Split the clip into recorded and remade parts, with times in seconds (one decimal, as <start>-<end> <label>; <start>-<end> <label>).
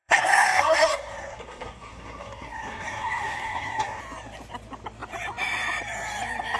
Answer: 0.0-4.0 remade; 4.0-6.6 recorded